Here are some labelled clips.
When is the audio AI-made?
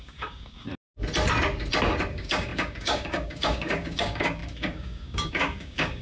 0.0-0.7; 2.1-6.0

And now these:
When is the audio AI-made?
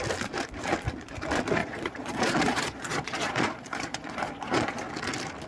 1.6-4.9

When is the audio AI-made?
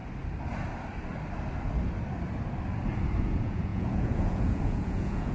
3.2-5.3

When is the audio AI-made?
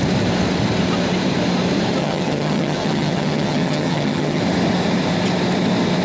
2.0-4.4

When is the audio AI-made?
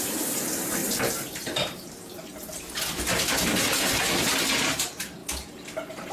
0.0-2.3; 4.6-5.2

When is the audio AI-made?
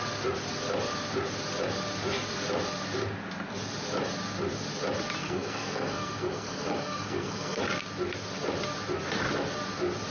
5.2-7.6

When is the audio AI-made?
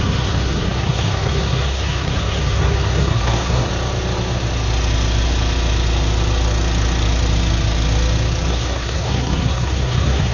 0.0-3.7; 8.5-10.3